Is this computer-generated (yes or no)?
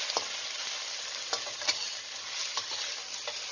no